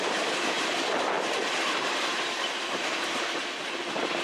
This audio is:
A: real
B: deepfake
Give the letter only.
A